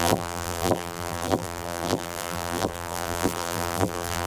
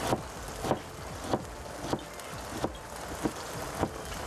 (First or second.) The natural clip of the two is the second